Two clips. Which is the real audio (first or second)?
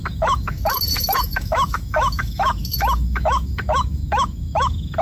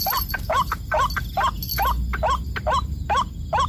second